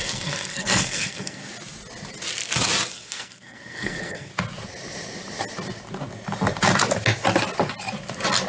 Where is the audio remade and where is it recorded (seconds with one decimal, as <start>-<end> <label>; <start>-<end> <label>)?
0.0-1.5 remade; 1.5-2.9 recorded; 2.9-4.3 remade; 4.3-8.5 recorded